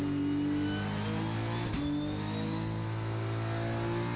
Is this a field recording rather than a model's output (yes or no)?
yes